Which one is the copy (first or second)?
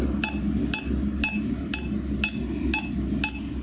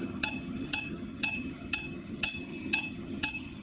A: second